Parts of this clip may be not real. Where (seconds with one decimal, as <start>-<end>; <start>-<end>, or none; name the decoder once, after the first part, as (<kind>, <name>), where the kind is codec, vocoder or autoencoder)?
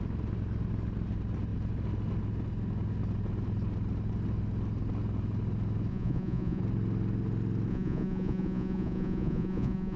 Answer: 5.9-6.6 (vocoder, Vocos); 7.7-10.0